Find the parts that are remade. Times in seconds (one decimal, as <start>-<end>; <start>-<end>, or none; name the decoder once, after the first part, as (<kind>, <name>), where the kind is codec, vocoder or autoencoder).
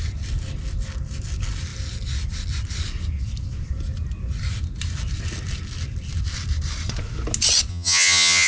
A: 7.7-8.5 (vocoder, HiFi-GAN)